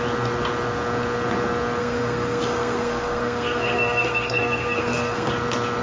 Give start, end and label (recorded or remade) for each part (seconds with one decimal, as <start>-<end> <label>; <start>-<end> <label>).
0.0-1.8 recorded; 1.8-5.3 remade; 5.3-5.8 recorded